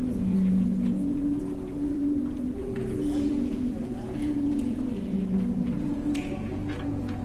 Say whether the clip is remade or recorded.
remade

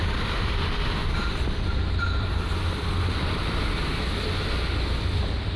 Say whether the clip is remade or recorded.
remade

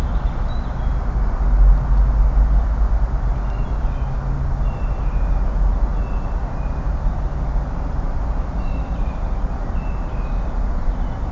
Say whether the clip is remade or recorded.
recorded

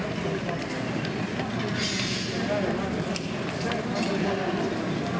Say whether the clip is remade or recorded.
recorded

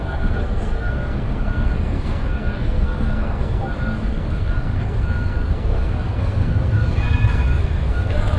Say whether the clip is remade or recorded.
remade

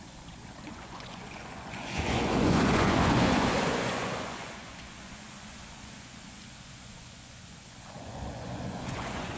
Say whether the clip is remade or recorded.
remade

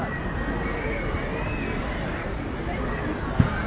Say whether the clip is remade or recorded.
recorded